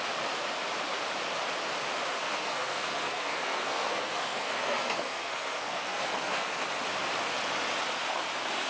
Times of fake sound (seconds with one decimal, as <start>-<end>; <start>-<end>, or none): 2.2-6.6